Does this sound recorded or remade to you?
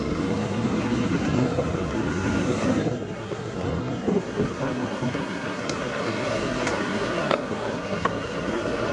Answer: remade